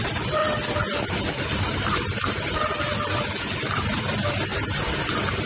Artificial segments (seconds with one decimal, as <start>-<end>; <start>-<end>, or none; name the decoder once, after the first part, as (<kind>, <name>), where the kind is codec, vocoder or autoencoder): 0.0-0.4 (vocoder, BigVGAN v2); 3.7-4.5; 5.1-5.5